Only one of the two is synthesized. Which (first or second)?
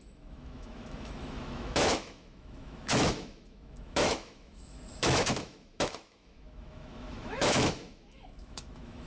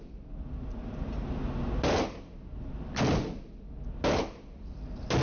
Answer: first